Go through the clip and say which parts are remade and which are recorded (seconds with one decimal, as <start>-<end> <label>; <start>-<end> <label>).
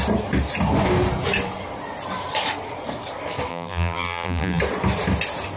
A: 0.0-3.5 recorded; 3.5-4.6 remade; 4.6-5.6 recorded